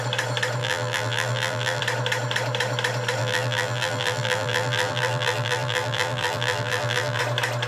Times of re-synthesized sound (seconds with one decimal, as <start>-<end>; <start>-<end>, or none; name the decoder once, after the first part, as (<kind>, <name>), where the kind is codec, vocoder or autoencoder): 0.6-1.8 (vocoder, BigVGAN v2); 3.2-7.2